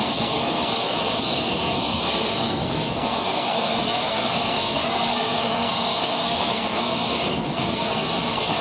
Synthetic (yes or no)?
yes